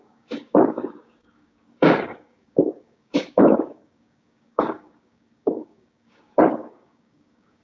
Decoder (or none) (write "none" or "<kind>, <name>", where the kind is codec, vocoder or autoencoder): codec, DAC